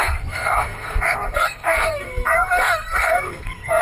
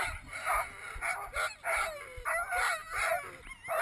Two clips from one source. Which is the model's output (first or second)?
first